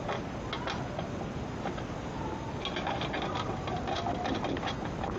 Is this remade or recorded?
recorded